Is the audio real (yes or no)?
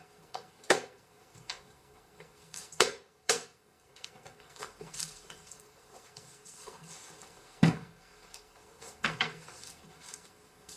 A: no